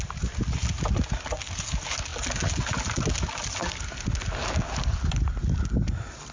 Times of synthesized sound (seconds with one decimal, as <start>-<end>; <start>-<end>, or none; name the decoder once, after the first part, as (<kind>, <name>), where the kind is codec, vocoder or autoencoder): none